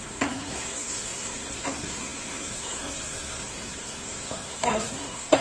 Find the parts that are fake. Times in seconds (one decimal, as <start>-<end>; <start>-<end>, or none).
0.0-5.4